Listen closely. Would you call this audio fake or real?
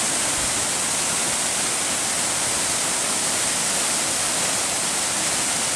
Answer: real